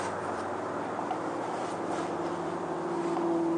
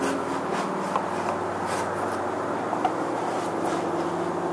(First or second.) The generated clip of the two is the first